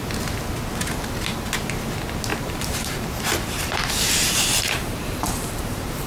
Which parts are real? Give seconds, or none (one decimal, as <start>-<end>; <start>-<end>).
0.0-2.3